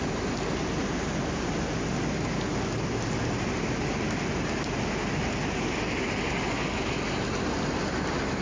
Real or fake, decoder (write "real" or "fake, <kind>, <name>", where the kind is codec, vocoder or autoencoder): real